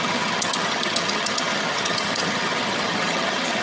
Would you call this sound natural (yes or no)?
no